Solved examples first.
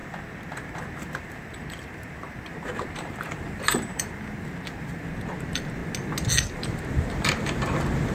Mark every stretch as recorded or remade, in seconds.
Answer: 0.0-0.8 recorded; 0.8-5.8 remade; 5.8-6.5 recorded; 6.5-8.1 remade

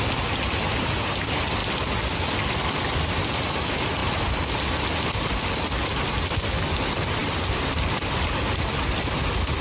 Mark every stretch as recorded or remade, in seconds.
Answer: 0.0-7.2 recorded; 7.2-8.7 remade; 8.7-9.6 recorded

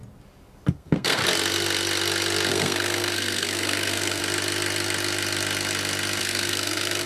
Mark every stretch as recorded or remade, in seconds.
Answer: 0.0-0.7 recorded; 0.7-1.2 remade; 1.2-2.5 recorded; 2.5-4.2 remade; 4.2-6.2 recorded; 6.2-7.1 remade

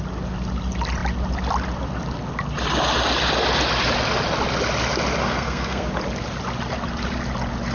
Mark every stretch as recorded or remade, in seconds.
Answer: 0.0-5.2 recorded; 5.2-5.9 remade; 5.9-7.7 recorded

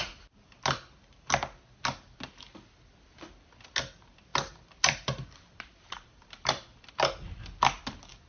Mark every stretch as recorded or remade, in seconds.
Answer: 0.0-4.3 recorded; 4.3-6.9 remade; 6.9-8.3 recorded

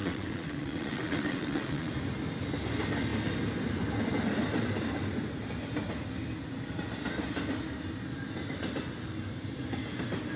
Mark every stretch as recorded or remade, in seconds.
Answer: 0.0-1.9 remade; 1.9-10.4 recorded

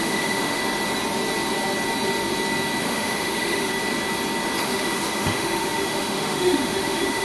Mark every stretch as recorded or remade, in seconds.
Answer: 0.0-0.6 remade; 0.6-2.8 recorded; 2.8-3.7 remade; 3.7-4.6 recorded; 4.6-7.2 remade